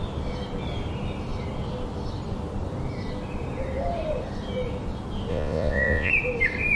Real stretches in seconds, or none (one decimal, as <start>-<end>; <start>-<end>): 0.0-5.3; 6.1-6.8